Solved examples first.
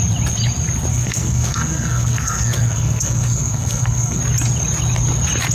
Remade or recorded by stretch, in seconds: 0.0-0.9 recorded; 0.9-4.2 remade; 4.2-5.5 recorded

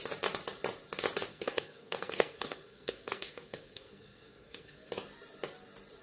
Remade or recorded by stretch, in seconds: 0.0-1.3 recorded; 1.3-4.9 remade; 4.9-6.0 recorded